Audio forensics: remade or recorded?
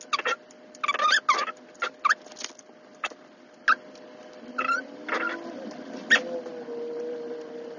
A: recorded